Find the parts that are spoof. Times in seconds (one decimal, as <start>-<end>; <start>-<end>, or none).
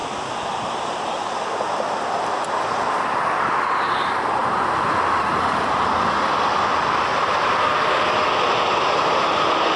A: 4.4-5.9